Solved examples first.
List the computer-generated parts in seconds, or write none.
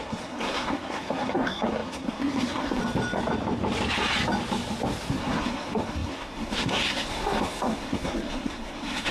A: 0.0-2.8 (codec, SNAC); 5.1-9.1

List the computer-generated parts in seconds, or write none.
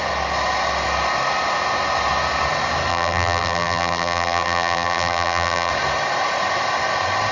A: 2.9-5.7 (vocoder, BigVGAN v2)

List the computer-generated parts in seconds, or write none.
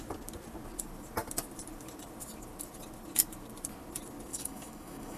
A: 4.3-5.2 (codec, DAC)